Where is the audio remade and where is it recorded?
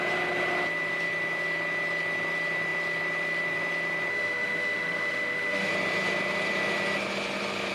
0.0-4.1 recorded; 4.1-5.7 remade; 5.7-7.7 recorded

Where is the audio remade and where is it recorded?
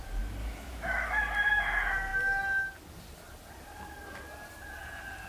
0.0-0.4 recorded; 0.4-1.2 remade; 1.2-5.3 recorded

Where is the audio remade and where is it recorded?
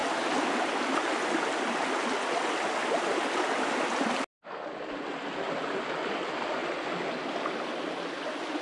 0.0-8.6 recorded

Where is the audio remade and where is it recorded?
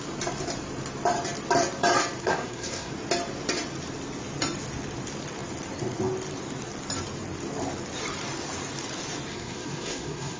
0.0-2.2 recorded; 2.2-2.9 remade; 2.9-9.3 recorded; 9.3-10.4 remade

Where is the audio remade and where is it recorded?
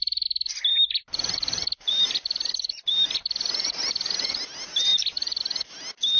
0.0-0.7 recorded; 0.7-4.4 remade; 4.4-6.2 recorded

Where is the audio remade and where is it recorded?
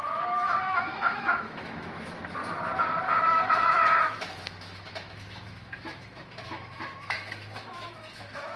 0.0-2.4 remade; 2.4-3.2 recorded; 3.2-8.6 remade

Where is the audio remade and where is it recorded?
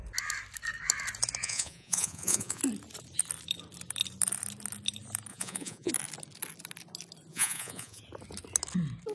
0.0-1.4 recorded; 1.4-2.6 remade; 2.6-5.3 recorded; 5.3-5.9 remade; 5.9-7.3 recorded; 7.3-8.0 remade; 8.0-9.1 recorded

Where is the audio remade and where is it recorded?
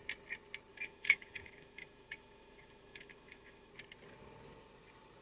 0.0-0.7 recorded; 0.7-3.7 remade; 3.7-5.2 recorded